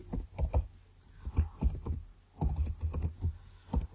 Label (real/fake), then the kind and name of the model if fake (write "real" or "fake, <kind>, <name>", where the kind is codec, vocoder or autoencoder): real